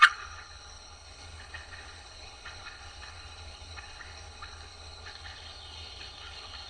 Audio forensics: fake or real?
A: fake